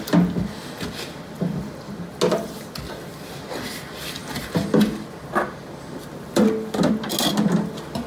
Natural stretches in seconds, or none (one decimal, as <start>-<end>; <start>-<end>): 0.0-8.1